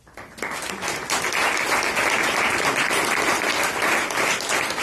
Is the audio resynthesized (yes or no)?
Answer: no